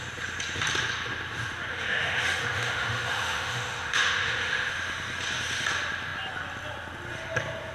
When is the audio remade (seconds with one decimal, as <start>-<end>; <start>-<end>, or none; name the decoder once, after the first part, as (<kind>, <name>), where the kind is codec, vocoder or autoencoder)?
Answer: 1.7-4.7 (autoencoder, DAC-VAE)